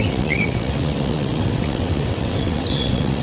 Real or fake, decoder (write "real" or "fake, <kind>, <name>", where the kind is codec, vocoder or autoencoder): fake, vocoder, WaveNeXt